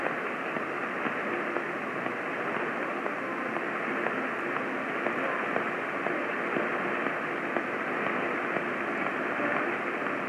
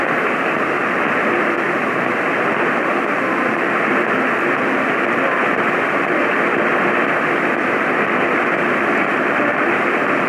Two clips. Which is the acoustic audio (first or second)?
first